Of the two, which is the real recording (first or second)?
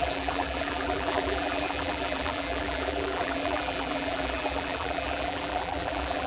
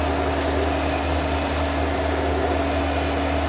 second